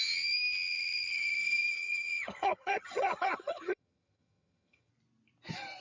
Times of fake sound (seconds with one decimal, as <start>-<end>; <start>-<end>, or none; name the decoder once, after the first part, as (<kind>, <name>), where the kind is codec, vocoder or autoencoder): 1.4-4.9 (vocoder, HiFi-GAN)